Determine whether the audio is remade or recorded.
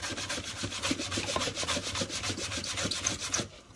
recorded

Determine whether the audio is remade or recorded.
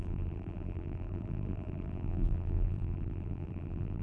remade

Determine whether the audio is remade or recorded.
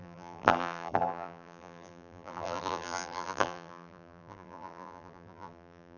remade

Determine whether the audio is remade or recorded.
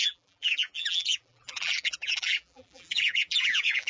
remade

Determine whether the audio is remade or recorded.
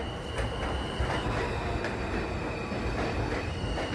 recorded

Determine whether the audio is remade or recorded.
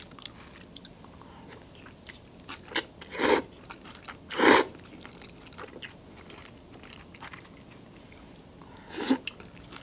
remade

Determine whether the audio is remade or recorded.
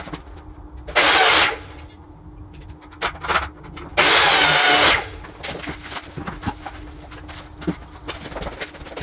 recorded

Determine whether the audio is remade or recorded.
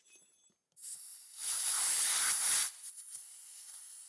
recorded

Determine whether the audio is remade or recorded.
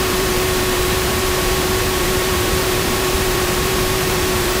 remade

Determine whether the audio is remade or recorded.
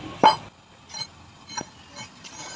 recorded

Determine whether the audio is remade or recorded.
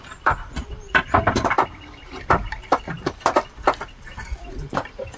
remade